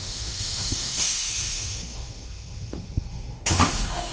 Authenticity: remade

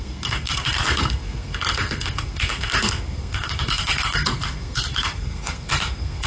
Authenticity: remade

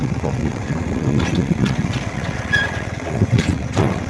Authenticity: remade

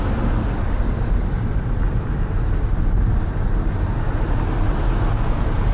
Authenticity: recorded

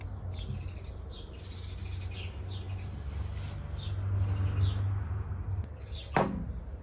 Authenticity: recorded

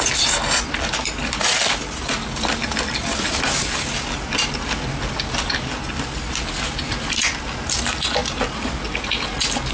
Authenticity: recorded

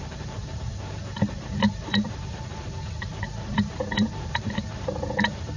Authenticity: remade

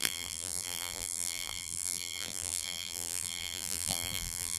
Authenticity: remade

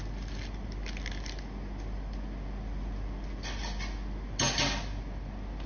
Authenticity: recorded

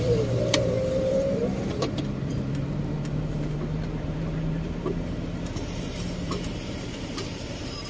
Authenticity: remade